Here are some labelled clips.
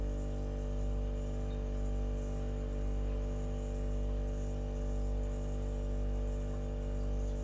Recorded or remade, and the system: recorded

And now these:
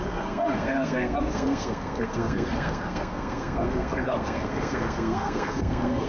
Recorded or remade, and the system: remade, codec, SNAC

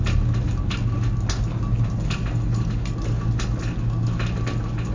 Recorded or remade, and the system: recorded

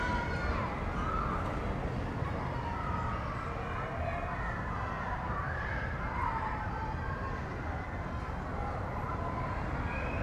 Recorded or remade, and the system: recorded